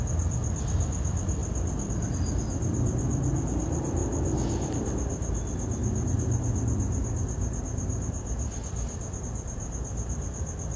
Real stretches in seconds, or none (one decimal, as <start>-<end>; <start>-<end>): 0.0-10.8